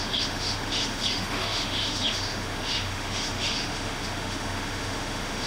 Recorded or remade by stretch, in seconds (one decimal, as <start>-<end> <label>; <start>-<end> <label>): 0.0-5.5 remade

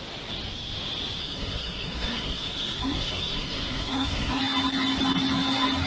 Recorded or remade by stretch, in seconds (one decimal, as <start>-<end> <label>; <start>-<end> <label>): 0.0-1.2 recorded; 1.2-4.4 remade; 4.4-5.9 recorded

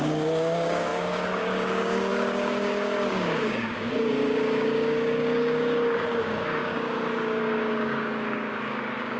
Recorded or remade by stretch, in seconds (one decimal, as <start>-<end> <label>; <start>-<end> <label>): 0.0-9.2 remade